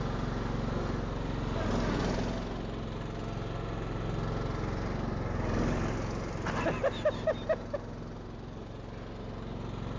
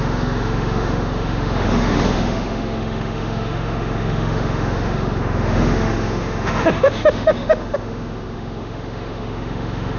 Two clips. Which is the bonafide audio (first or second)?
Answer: first